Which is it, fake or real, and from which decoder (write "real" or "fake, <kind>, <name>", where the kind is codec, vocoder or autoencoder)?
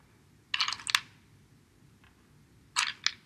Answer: real